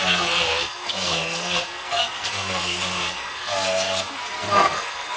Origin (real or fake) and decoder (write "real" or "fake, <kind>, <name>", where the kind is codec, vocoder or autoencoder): fake, codec, SNAC